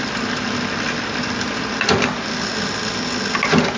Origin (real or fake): real